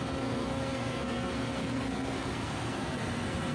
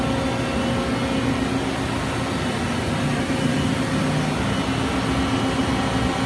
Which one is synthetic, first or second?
first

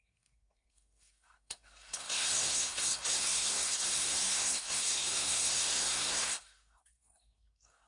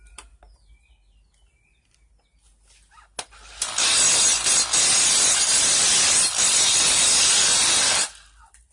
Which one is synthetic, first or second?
first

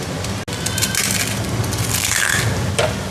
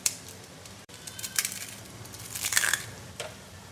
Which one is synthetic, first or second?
second